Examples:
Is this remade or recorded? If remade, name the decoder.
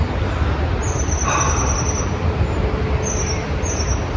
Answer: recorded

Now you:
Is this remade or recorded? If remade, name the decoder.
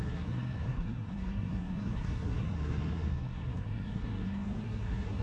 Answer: remade, codec, SNAC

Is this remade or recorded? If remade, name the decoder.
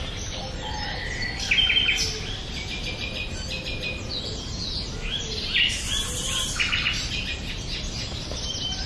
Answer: recorded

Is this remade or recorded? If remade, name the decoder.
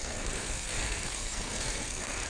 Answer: remade, codec, SNAC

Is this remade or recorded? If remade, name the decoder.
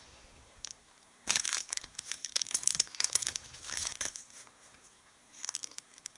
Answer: remade, codec, SNAC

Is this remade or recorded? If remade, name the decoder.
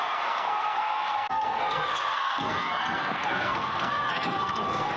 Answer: remade, codec, SNAC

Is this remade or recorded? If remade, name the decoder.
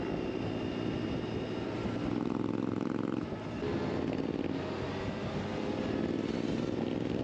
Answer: recorded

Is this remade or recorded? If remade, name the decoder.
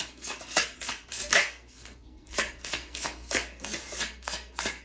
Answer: remade, codec, SNAC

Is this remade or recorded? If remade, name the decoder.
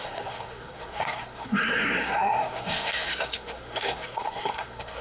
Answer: remade, codec, SNAC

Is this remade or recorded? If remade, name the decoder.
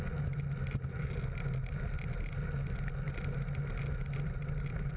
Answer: recorded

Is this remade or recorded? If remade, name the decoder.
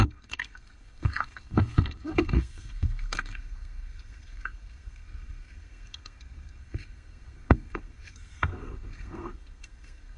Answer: remade, codec, SNAC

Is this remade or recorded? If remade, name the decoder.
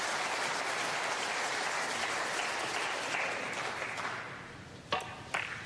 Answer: recorded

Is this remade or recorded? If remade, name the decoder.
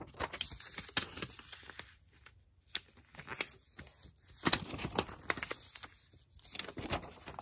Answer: recorded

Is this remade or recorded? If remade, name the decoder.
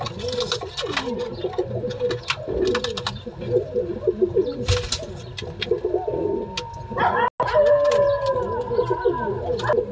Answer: recorded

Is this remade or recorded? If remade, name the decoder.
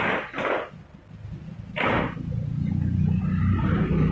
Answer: recorded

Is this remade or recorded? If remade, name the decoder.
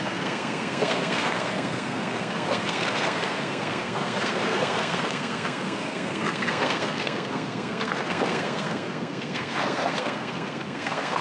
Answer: remade, codec, SNAC